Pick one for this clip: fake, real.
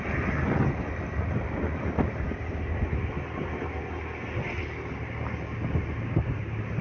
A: real